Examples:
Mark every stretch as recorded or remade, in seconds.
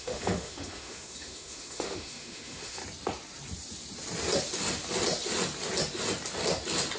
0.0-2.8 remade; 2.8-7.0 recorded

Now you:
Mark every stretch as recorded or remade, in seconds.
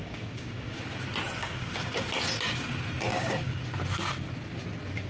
0.0-0.8 remade; 0.8-1.4 recorded; 1.4-2.0 remade; 2.0-3.1 recorded; 3.1-3.6 remade; 3.6-5.1 recorded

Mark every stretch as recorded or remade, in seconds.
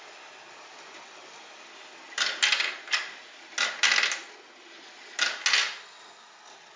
0.0-6.8 recorded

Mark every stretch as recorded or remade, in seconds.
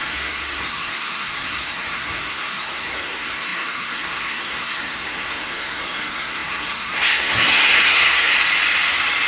0.0-8.3 remade; 8.3-9.3 recorded